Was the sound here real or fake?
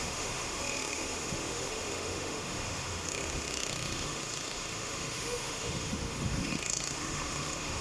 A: fake